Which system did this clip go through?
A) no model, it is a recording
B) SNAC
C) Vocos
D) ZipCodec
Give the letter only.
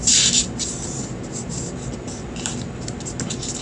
A